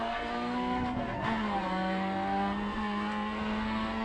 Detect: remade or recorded remade